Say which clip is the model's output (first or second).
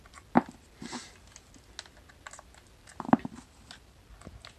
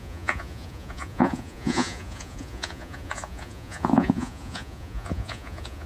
second